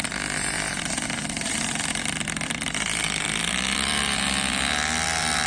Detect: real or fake real